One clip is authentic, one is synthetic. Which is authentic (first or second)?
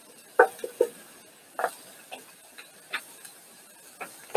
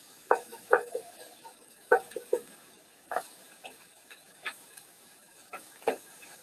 first